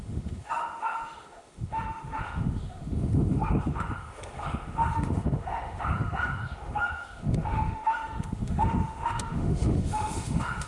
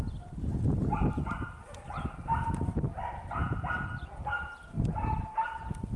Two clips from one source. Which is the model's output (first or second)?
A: first